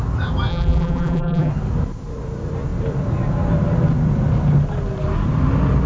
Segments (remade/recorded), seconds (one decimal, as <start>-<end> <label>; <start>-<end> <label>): 0.0-0.5 recorded; 0.5-1.5 remade; 1.5-5.9 recorded